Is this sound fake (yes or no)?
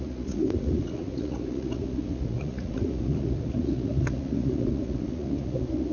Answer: yes